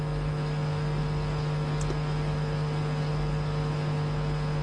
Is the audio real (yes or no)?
yes